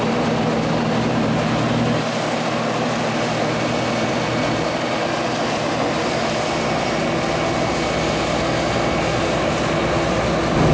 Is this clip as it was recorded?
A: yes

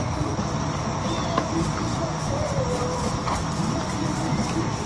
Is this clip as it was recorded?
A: yes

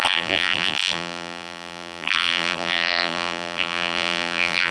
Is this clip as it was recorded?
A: no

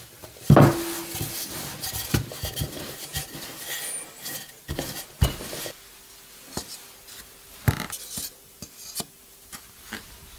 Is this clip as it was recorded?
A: yes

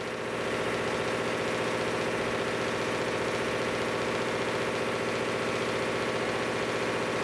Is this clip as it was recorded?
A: yes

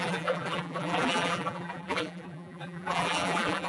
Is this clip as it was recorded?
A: no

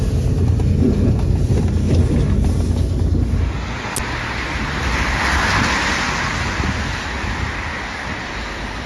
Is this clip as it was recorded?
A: yes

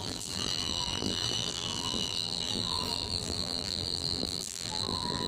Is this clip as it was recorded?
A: no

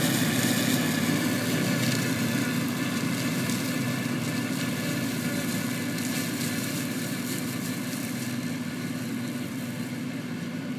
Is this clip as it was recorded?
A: no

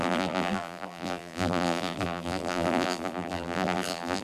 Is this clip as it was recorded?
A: no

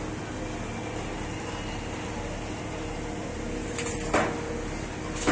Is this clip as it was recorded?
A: yes